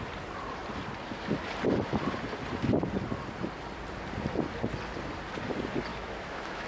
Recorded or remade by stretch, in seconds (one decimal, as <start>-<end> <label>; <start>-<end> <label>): 0.0-5.9 recorded; 5.9-6.7 remade